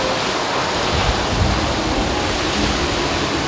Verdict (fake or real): real